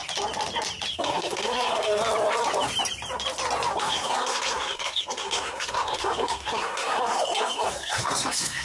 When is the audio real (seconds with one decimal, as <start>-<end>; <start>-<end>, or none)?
0.0-0.9; 2.0-3.8